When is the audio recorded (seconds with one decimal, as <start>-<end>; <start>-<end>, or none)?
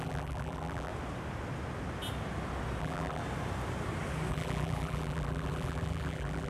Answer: 0.9-2.8; 3.2-4.3